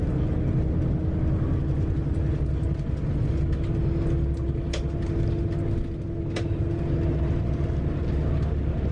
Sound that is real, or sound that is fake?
real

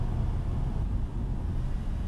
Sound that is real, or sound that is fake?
real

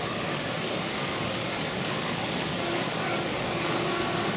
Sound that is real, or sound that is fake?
fake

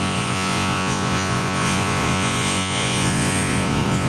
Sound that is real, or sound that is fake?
fake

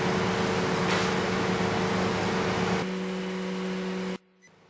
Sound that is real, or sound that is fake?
real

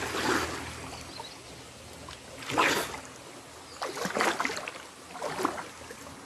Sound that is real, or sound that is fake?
real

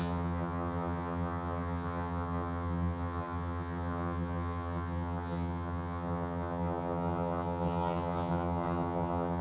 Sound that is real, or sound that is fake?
fake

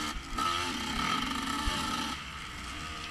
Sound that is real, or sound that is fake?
real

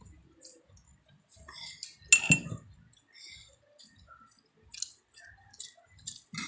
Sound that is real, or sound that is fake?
real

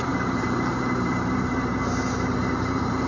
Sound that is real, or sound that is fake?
fake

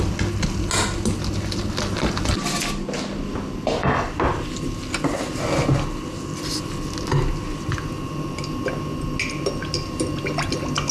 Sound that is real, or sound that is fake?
real